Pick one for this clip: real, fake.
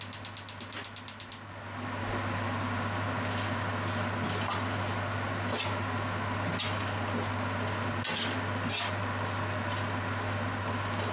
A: real